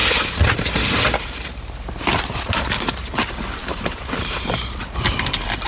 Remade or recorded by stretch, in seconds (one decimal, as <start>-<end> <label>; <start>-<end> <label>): 0.0-3.6 recorded; 3.6-4.8 remade; 4.8-5.7 recorded